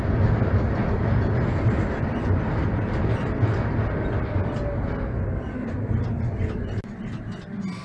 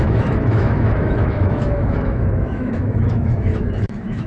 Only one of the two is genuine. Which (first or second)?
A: first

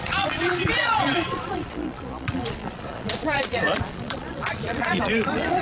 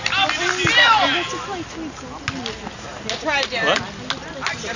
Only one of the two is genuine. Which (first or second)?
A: second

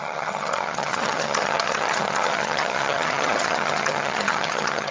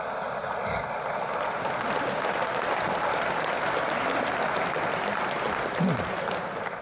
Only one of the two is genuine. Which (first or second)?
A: second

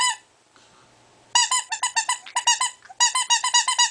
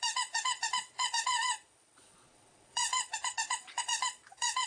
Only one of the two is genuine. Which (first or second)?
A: first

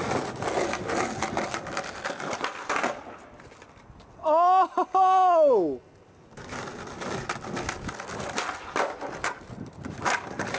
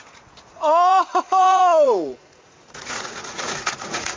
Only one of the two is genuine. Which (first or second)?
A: first